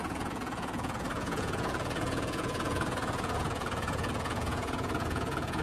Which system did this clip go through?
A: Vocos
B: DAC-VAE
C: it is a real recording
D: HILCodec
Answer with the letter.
A